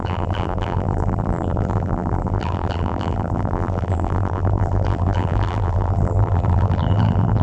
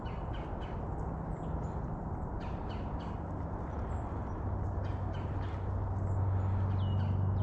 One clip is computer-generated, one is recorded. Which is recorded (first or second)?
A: second